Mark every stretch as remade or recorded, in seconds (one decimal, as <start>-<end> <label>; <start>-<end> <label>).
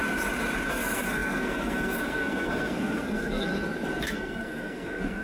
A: 0.0-0.7 recorded; 0.7-3.5 remade; 3.5-4.0 recorded; 4.0-5.2 remade